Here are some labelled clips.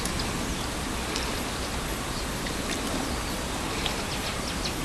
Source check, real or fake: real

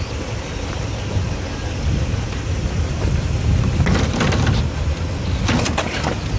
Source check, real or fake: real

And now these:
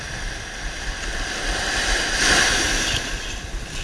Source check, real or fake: real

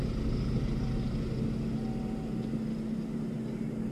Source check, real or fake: real